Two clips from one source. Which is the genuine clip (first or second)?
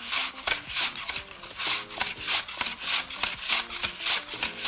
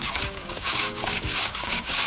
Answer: first